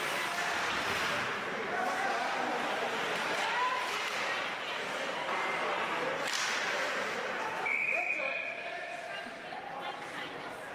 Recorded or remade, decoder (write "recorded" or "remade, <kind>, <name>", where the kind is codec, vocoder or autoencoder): remade, vocoder, BigVGAN v2